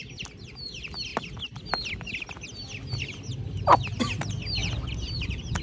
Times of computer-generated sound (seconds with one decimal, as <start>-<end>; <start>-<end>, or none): 4.6-5.6